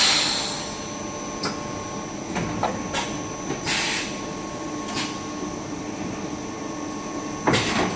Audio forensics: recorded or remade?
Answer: recorded